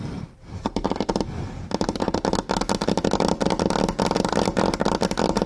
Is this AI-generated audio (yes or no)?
no